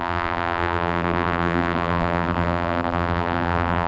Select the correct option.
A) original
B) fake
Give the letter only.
B